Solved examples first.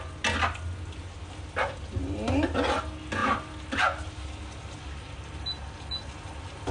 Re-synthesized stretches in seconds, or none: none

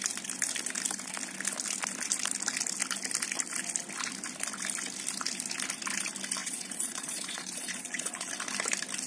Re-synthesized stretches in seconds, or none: 6.4-8.3

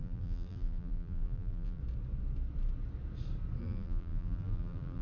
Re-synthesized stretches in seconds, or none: 0.0-1.8; 3.6-5.0

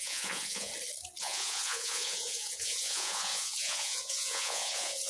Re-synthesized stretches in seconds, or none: 0.0-0.7; 1.2-5.1

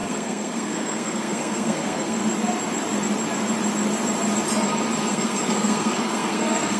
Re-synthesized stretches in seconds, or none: 0.0-2.2; 5.1-6.8

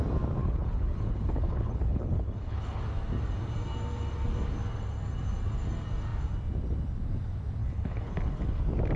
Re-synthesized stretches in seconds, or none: 0.4-2.8; 7.6-8.6

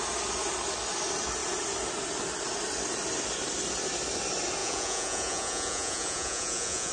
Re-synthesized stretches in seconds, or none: 4.6-6.9